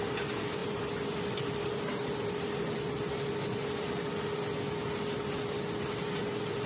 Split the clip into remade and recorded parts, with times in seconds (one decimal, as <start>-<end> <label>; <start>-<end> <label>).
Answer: 0.0-6.7 recorded